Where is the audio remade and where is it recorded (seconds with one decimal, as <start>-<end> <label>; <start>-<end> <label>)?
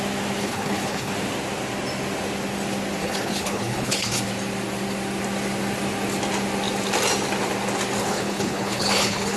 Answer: 0.0-0.4 recorded; 0.4-1.1 remade; 1.1-3.0 recorded; 3.0-4.2 remade; 4.2-8.0 recorded; 8.0-9.4 remade